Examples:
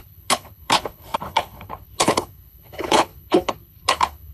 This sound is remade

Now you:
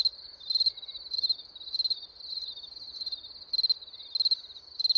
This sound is recorded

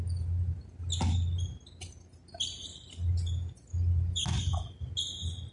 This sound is recorded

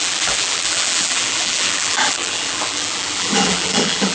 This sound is remade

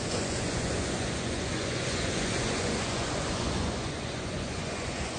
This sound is remade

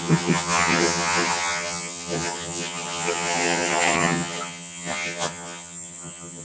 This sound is remade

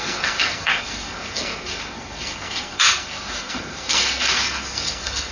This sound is remade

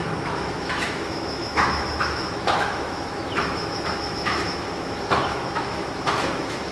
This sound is remade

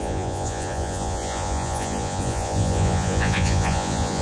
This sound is remade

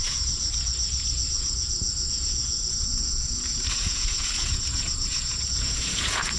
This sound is remade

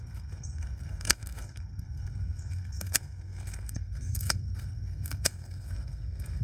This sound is remade